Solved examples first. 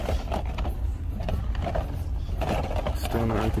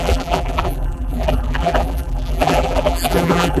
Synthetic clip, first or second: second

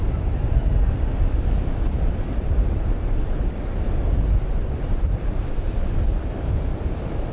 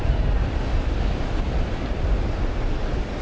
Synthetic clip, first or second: first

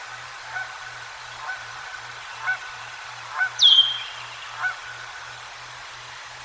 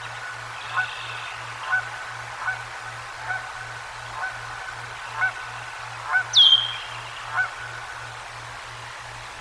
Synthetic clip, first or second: first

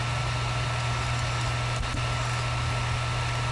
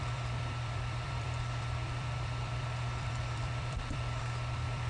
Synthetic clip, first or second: second